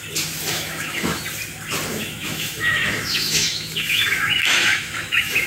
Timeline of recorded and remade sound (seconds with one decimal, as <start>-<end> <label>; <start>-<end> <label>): 0.0-0.5 recorded; 0.5-1.2 remade; 1.2-1.9 recorded; 1.9-5.5 remade